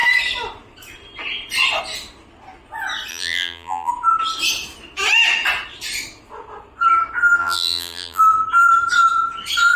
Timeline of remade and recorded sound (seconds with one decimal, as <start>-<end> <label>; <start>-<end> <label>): 0.0-3.1 recorded; 3.1-3.9 remade; 3.9-7.4 recorded; 7.4-8.2 remade; 8.2-9.8 recorded